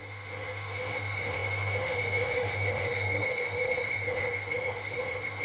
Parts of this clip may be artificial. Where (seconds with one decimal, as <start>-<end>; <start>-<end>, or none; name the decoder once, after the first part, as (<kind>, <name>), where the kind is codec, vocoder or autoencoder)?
0.0-5.4 (autoencoder, DAC-VAE)